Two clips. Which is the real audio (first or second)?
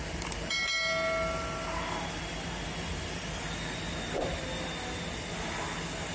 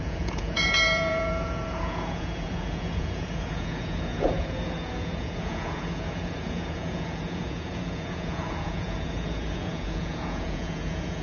first